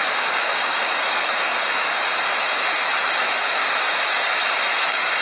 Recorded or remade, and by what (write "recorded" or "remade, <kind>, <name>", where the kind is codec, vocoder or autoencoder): remade, autoencoder, DAC-VAE